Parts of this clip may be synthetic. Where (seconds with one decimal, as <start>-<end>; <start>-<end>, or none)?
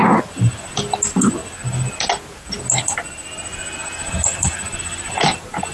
none